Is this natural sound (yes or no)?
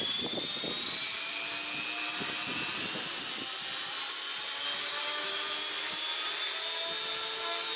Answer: yes